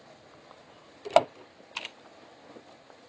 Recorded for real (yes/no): yes